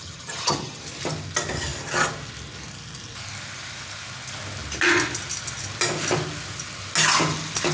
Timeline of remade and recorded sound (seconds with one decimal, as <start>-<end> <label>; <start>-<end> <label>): 0.0-0.8 remade; 0.8-7.7 recorded